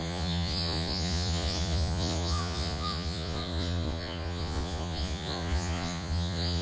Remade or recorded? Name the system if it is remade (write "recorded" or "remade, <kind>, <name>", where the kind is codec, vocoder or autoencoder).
remade, vocoder, Vocos